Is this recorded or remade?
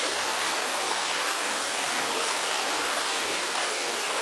remade